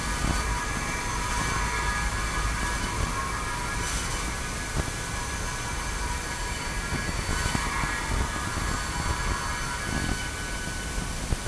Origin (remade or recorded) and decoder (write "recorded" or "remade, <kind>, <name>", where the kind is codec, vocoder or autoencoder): recorded